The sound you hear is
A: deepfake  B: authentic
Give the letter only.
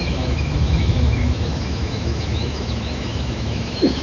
A